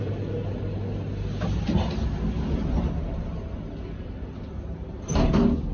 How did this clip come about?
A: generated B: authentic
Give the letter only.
B